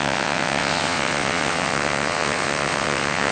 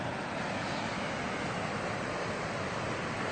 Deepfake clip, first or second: first